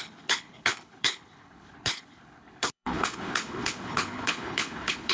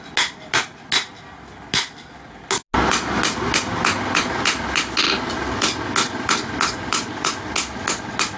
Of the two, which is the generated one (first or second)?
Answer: first